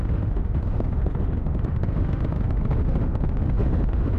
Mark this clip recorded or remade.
remade